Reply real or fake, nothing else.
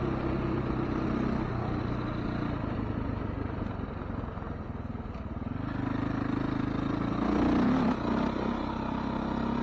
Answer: real